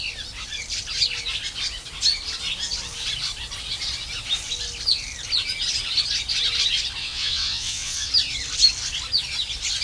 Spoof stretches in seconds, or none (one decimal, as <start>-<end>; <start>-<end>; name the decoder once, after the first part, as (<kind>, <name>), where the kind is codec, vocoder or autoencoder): 7.0-8.1 (vocoder, WaveNeXt)